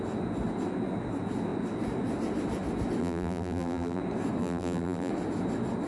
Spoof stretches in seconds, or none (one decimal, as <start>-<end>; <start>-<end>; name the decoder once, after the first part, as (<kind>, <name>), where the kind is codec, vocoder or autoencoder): 3.0-4.0 (vocoder, BigVGAN v2); 4.4-5.1